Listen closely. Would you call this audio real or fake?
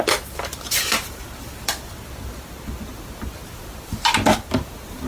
real